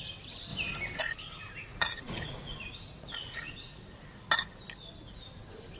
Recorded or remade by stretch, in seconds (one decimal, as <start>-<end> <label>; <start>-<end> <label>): 0.0-1.7 recorded; 1.7-3.7 remade; 3.7-5.8 recorded